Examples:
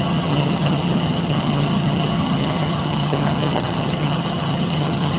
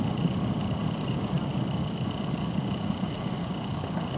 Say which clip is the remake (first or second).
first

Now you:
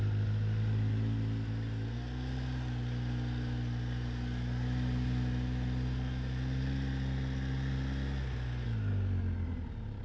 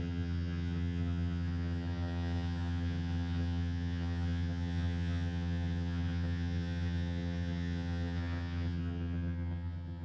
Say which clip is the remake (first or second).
second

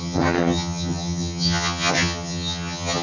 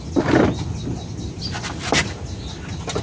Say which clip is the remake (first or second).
first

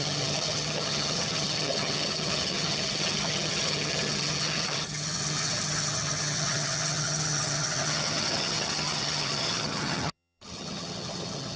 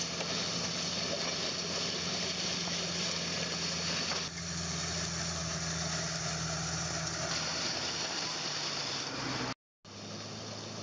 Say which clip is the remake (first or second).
first